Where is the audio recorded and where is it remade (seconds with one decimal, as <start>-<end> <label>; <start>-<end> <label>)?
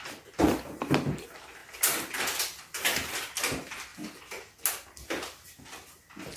0.0-1.6 recorded; 1.6-2.6 remade; 2.6-6.4 recorded